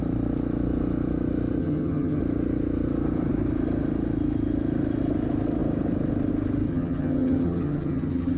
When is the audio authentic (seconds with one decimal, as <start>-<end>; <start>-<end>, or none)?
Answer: 0.0-1.6; 2.2-6.7